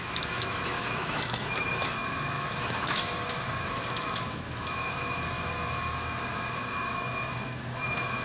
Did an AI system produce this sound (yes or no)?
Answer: yes